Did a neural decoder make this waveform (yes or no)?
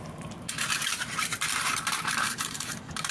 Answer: yes